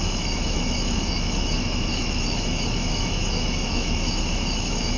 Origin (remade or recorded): remade